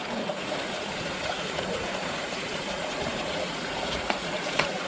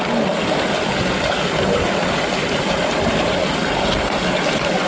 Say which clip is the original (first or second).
second